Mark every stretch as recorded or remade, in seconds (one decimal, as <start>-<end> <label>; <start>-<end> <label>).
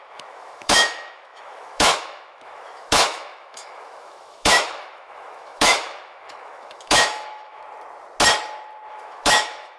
0.0-7.6 remade; 7.6-8.9 recorded; 8.9-9.8 remade